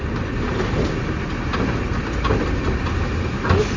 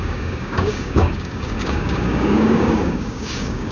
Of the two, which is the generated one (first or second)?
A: second